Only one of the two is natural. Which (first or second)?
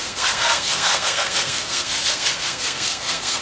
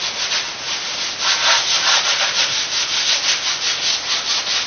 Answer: second